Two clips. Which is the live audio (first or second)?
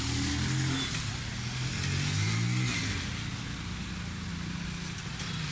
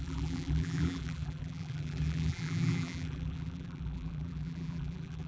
first